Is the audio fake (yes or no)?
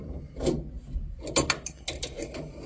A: no